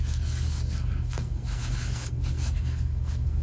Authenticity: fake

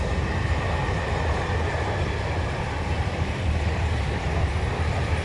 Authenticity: real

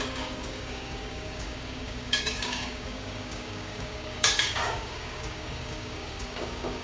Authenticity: fake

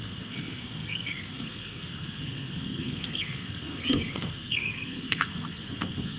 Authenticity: fake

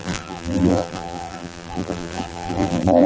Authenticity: fake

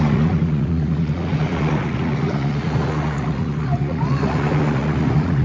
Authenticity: fake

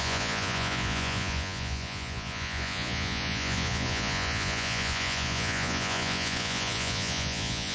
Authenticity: fake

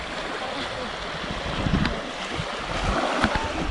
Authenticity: real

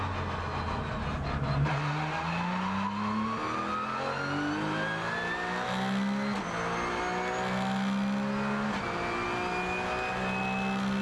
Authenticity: real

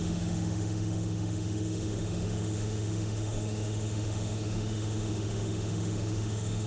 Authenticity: fake